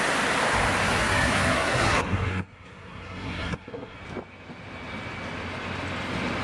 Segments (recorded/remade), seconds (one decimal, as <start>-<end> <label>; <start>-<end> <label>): 0.0-1.0 recorded; 1.0-4.0 remade; 4.0-6.4 recorded